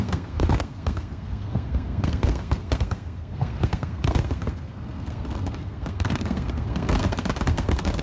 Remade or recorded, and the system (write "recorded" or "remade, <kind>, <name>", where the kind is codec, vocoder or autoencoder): remade, codec, SNAC